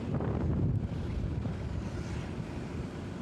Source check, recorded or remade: recorded